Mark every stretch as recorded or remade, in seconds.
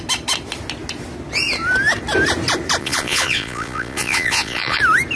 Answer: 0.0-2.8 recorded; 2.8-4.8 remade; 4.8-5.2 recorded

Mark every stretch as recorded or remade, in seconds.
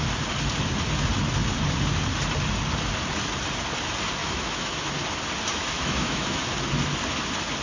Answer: 0.0-4.2 recorded; 4.2-4.9 remade; 4.9-5.5 recorded; 5.5-6.4 remade; 6.4-7.6 recorded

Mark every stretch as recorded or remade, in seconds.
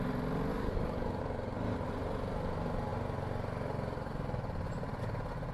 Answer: 0.0-0.5 recorded; 0.5-1.2 remade; 1.2-5.5 recorded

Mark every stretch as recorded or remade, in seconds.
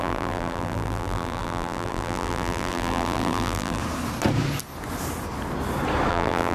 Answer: 0.0-3.8 remade; 3.8-6.1 recorded; 6.1-6.5 remade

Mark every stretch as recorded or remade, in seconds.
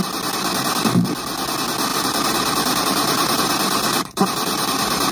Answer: 0.0-1.9 recorded; 1.9-5.1 remade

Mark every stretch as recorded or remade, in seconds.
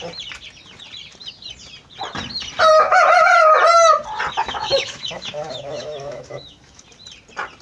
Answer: 0.0-4.4 recorded; 4.4-6.8 remade; 6.8-7.6 recorded